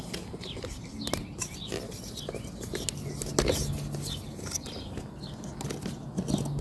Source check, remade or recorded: recorded